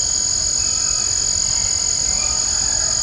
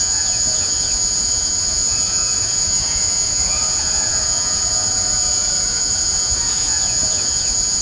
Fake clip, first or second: second